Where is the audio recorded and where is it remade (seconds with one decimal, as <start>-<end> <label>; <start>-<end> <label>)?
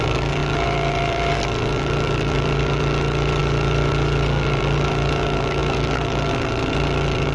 0.0-7.3 remade